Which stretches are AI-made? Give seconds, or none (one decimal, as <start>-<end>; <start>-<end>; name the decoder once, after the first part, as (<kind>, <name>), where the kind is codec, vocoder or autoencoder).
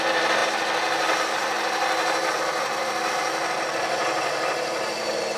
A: none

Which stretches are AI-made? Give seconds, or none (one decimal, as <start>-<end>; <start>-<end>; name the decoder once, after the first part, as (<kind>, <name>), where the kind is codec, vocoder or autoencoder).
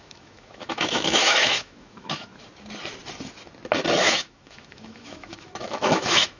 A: 0.0-2.3 (autoencoder, DAC-VAE); 4.0-6.4